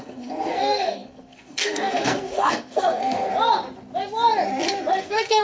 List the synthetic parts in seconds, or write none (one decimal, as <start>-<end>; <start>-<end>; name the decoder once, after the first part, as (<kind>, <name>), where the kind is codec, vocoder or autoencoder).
0.0-3.3 (codec, SNAC); 4.9-5.4